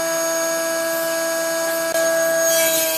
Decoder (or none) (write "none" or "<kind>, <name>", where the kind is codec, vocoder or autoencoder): none